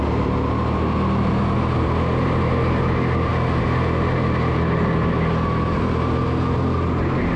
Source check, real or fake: real